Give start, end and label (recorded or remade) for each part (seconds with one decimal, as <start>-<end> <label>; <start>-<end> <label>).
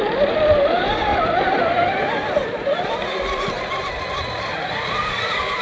0.0-5.6 recorded